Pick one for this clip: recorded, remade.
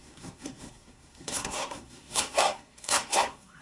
remade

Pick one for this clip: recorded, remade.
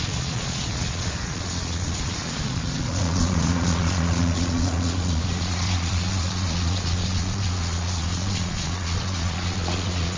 remade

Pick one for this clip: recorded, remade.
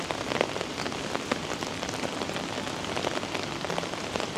recorded